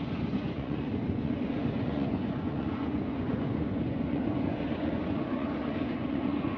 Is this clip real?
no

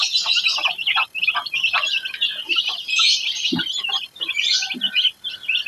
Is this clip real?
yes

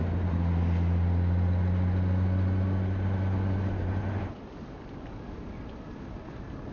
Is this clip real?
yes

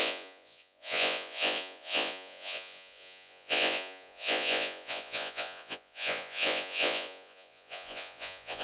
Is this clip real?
no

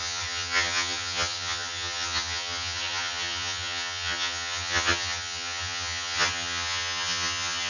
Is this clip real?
no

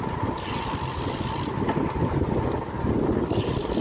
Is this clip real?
yes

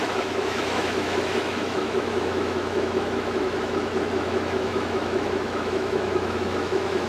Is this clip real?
no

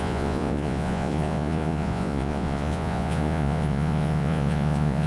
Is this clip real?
no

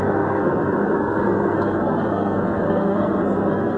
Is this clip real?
no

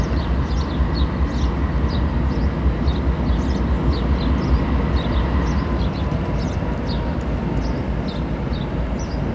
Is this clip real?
yes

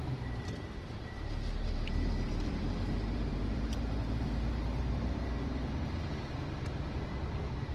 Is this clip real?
no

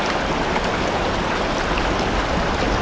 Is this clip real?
yes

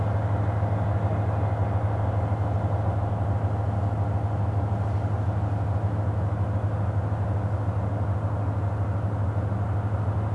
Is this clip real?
yes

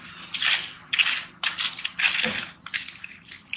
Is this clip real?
yes